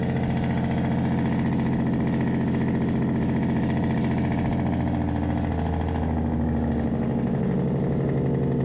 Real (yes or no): yes